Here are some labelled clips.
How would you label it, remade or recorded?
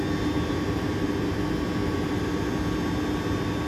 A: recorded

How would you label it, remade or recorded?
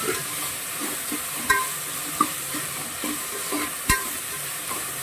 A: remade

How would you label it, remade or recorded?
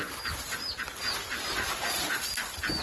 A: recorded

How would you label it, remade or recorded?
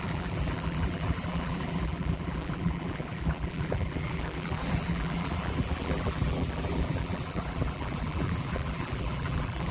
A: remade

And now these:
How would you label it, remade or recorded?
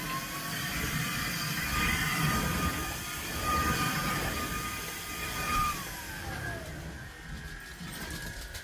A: remade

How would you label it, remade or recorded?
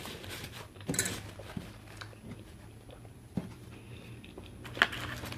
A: recorded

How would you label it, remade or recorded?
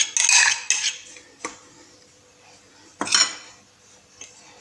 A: recorded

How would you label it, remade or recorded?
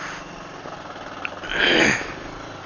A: recorded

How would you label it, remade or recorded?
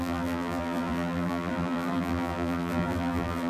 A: remade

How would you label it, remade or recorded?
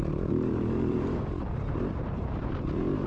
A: remade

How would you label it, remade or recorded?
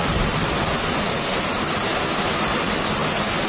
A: remade